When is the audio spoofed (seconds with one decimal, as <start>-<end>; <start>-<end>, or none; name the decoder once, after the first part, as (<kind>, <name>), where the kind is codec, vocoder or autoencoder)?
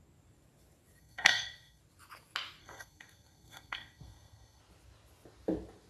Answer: 1.0-1.8 (codec, SNAC); 2.6-4.6